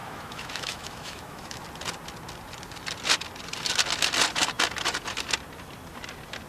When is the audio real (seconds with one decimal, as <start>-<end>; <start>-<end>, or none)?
1.6-6.5